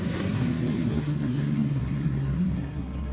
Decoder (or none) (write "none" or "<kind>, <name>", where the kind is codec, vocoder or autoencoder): codec, SNAC